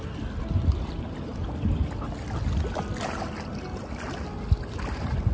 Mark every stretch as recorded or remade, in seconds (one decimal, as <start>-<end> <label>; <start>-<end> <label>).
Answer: 0.0-5.3 recorded